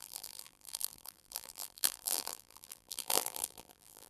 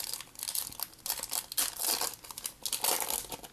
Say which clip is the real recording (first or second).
second